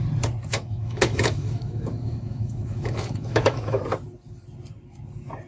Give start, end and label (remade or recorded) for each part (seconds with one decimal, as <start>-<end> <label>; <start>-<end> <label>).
0.0-0.5 recorded; 0.5-3.8 remade; 3.8-5.5 recorded